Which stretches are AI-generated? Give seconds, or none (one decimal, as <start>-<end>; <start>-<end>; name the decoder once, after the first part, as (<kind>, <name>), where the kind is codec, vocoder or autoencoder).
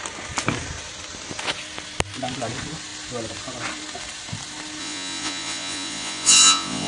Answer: 4.8-6.9 (vocoder, Vocos)